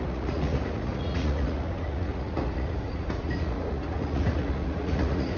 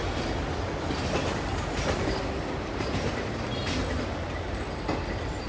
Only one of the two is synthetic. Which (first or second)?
first